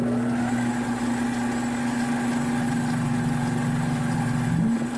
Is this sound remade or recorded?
recorded